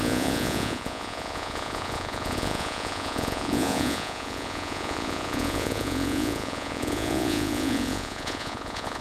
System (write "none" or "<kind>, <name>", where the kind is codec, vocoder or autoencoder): vocoder, Vocos